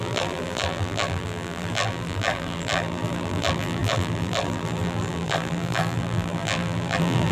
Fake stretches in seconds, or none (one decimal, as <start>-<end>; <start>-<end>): 0.0-7.3